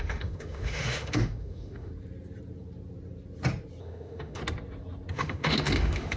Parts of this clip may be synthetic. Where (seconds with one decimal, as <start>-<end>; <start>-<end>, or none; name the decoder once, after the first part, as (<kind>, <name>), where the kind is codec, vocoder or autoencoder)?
0.0-1.9 (autoencoder, DAC-VAE); 3.8-4.4; 5.1-6.2